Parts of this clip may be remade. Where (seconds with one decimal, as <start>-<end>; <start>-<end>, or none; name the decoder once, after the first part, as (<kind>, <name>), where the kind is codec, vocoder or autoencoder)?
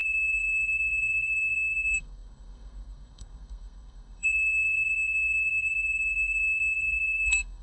0.0-7.6 (codec, SNAC)